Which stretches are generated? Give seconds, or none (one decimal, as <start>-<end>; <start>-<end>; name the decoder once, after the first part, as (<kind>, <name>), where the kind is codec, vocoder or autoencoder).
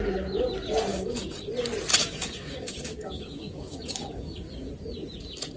0.9-1.5 (codec, DAC); 2.0-4.7